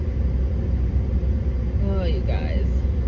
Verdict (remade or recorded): recorded